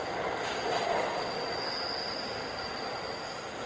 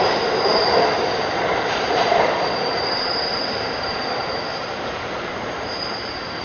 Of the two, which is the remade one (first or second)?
second